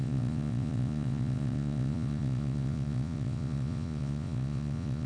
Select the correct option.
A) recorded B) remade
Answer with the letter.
B